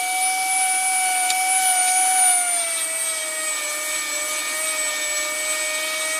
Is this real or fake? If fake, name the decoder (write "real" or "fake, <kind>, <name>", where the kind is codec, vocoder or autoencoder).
real